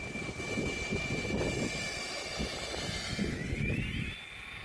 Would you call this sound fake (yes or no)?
no